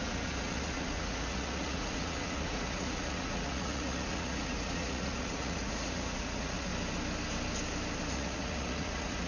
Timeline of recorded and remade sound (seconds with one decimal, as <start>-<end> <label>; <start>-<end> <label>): 0.0-6.7 remade; 6.7-8.1 recorded; 8.1-9.3 remade